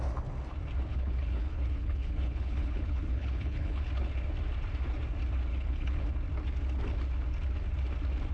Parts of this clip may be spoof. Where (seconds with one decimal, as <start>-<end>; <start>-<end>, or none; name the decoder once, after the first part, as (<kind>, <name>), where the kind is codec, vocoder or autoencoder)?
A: 0.9-3.9 (codec, HILCodec); 5.5-6.0

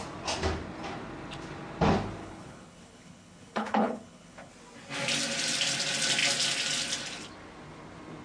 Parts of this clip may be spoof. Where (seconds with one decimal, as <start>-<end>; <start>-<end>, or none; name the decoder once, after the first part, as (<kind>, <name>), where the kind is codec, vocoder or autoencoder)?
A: 2.2-4.5 (codec, HILCodec)

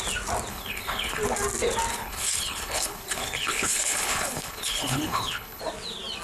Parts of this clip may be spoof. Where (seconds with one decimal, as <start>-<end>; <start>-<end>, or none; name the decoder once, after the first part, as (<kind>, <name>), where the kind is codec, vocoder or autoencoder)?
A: 0.5-1.2 (codec, HILCodec); 1.9-5.6

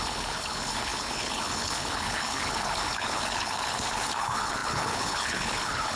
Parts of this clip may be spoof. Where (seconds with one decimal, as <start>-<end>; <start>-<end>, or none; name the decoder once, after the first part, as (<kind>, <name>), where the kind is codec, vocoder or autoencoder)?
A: 0.0-6.0 (codec, HILCodec)

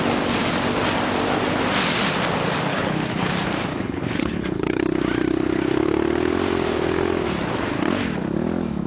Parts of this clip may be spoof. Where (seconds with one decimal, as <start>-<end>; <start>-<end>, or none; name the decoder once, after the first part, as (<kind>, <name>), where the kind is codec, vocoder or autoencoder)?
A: 2.7-3.3 (codec, HILCodec); 3.7-4.8